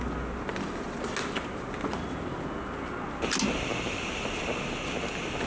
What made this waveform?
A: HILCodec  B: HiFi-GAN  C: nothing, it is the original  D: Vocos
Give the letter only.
C